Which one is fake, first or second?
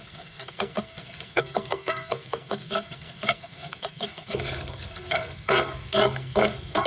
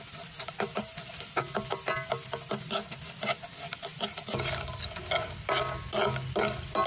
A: first